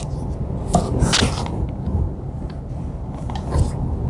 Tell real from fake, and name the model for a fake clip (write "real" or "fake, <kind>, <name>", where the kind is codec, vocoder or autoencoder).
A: real